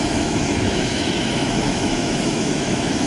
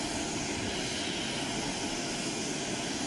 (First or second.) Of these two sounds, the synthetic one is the first